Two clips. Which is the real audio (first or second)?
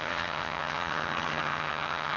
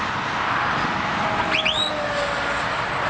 second